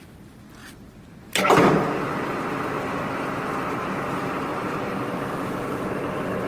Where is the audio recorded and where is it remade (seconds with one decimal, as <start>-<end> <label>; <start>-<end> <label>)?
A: 0.0-0.6 recorded; 0.6-1.9 remade; 1.9-4.5 recorded; 4.5-5.6 remade; 5.6-6.5 recorded